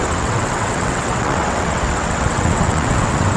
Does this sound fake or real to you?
fake